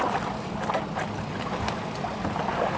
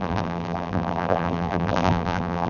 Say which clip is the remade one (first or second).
second